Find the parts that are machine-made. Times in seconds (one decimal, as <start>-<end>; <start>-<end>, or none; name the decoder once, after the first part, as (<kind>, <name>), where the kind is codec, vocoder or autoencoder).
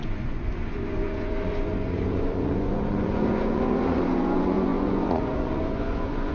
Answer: 0.0-6.3 (vocoder, Vocos)